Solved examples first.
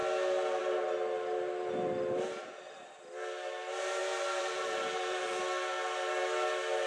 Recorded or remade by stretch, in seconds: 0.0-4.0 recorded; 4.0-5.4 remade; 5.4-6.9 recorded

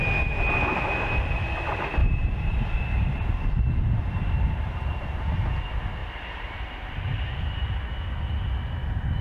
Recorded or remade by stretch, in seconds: 0.0-2.0 recorded; 2.0-5.5 remade; 5.5-6.0 recorded; 6.0-7.3 remade; 7.3-9.2 recorded